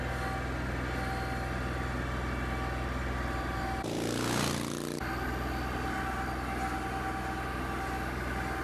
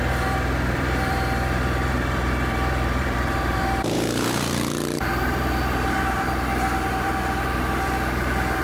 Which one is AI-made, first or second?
second